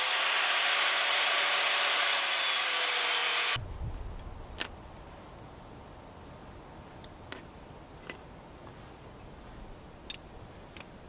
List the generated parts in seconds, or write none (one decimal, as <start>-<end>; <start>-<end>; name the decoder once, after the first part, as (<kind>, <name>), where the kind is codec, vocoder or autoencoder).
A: none

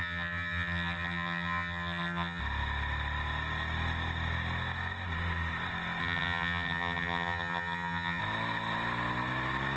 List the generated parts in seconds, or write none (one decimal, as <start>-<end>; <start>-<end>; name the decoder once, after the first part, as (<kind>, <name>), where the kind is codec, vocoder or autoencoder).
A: 0.0-2.4 (vocoder, HiFi-GAN); 6.0-8.2

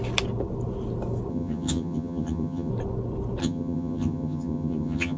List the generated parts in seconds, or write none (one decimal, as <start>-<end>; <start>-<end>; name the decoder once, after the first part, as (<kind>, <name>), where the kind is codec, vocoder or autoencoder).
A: 1.3-2.7 (vocoder, HiFi-GAN); 3.4-5.2

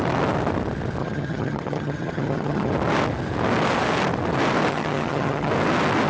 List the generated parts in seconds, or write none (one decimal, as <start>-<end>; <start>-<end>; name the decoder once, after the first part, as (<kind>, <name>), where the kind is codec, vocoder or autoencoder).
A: 1.0-2.7 (vocoder, HiFi-GAN); 4.7-5.5

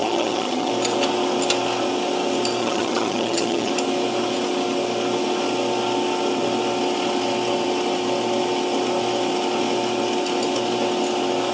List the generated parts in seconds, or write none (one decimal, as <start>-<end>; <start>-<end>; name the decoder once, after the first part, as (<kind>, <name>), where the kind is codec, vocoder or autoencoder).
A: 0.0-0.7 (vocoder, HiFi-GAN); 2.6-3.7

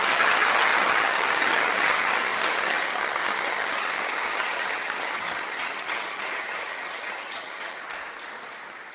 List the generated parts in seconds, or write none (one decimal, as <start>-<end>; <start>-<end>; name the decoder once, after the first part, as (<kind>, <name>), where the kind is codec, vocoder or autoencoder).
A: 0.0-7.8 (vocoder, HiFi-GAN)

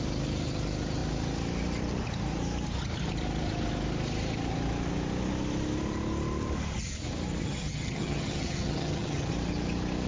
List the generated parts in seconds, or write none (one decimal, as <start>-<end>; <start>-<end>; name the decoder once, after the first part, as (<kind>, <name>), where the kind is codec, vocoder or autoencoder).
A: 7.4-9.3 (vocoder, HiFi-GAN)

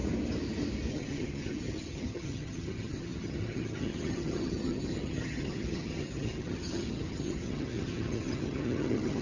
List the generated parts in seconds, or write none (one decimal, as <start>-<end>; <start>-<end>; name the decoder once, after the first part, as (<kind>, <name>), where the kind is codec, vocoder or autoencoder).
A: 0.9-9.2 (vocoder, HiFi-GAN)